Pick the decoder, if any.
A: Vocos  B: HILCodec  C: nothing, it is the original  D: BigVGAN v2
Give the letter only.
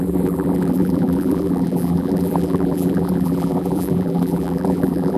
D